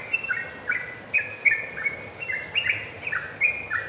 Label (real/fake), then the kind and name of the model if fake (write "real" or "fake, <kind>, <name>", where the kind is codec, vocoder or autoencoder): real